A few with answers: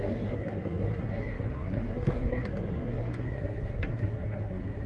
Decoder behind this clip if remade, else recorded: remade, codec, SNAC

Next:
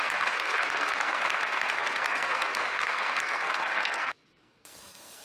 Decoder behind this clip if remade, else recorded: remade, codec, SNAC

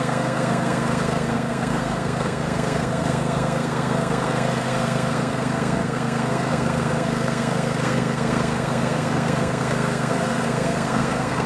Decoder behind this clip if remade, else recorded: remade, codec, SNAC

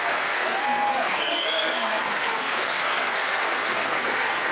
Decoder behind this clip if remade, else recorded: remade, codec, SNAC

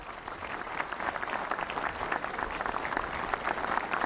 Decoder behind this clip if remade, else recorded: recorded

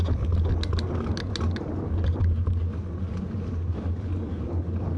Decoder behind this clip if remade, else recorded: recorded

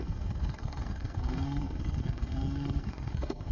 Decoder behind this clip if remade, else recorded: remade, codec, SNAC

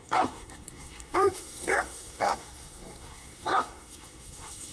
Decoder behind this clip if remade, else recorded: remade, codec, SNAC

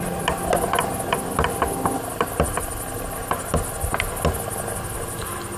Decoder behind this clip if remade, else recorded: recorded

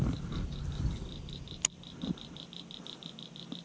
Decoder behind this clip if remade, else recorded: recorded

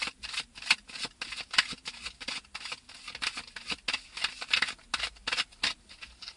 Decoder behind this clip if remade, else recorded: recorded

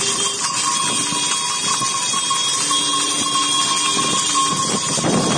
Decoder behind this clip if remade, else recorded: recorded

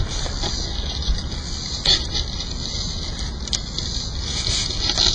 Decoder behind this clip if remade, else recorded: recorded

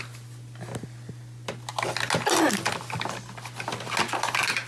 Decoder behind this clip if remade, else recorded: recorded